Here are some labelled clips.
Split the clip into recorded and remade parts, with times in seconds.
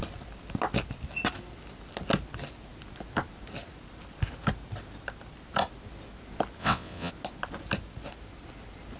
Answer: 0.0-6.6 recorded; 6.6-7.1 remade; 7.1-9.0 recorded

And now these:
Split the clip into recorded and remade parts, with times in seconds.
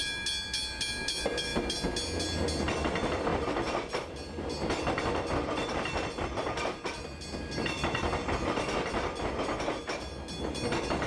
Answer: 0.0-11.1 recorded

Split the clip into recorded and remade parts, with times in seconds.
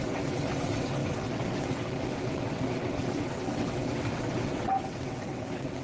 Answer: 0.0-5.8 remade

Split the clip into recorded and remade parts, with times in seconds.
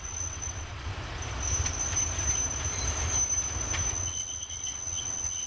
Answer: 0.0-0.9 remade; 0.9-3.9 recorded; 3.9-5.5 remade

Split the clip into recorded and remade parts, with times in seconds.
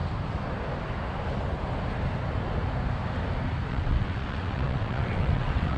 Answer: 0.0-3.7 recorded; 3.7-5.8 remade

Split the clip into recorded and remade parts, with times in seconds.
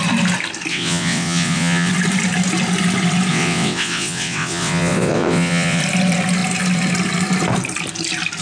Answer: 0.0-0.7 recorded; 0.7-1.9 remade; 1.9-3.3 recorded; 3.3-5.8 remade; 5.8-8.4 recorded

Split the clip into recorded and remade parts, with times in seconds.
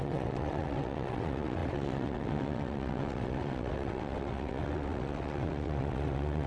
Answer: 0.0-6.5 remade